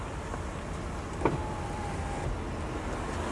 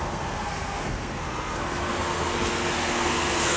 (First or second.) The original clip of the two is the first